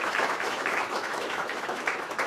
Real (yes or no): no